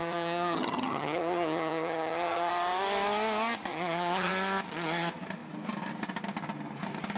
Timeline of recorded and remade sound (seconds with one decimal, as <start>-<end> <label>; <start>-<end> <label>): 0.0-2.5 remade; 2.5-3.7 recorded; 3.7-4.3 remade; 4.3-7.2 recorded